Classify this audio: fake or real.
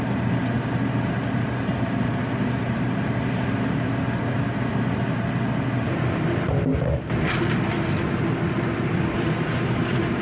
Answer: real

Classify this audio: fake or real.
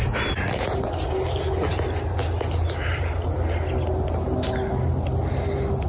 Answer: real